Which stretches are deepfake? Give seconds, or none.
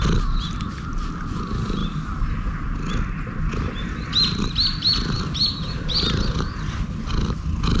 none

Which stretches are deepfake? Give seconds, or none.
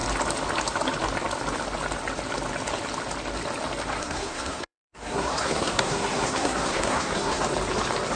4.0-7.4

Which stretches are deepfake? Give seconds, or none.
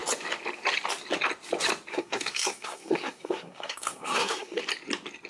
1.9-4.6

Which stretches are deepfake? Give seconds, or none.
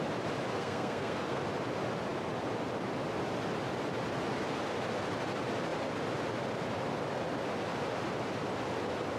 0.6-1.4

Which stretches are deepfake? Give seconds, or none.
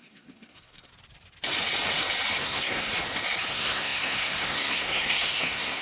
0.0-0.9; 2.4-2.9; 3.5-5.8